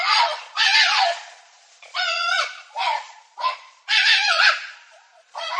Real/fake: fake